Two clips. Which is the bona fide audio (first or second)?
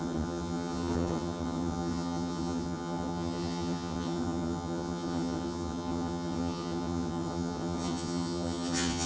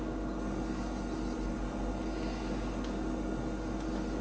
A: second